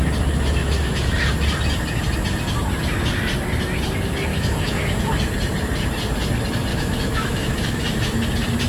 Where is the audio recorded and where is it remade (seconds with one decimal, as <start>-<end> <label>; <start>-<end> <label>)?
0.0-0.6 recorded; 0.6-1.3 remade; 1.3-4.3 recorded; 4.3-5.0 remade; 5.0-6.7 recorded; 6.7-8.0 remade; 8.0-8.7 recorded